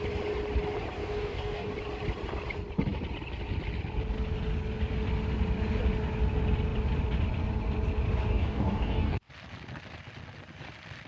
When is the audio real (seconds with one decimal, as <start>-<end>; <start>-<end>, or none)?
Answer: 0.0-1.0; 1.7-8.3; 9.3-11.1